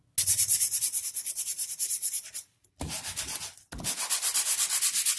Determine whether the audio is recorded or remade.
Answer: recorded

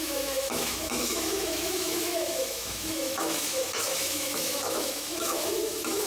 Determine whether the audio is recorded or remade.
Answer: remade